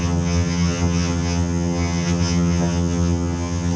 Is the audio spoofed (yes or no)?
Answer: yes